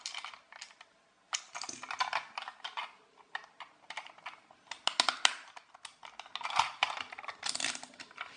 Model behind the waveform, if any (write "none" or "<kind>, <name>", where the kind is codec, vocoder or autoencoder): none